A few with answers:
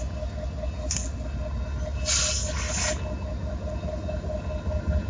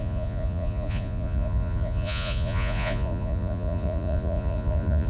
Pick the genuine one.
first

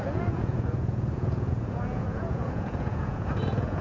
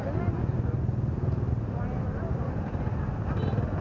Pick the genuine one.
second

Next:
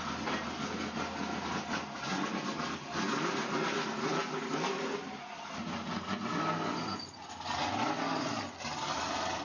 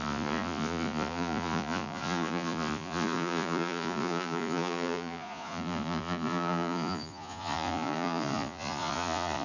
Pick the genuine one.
first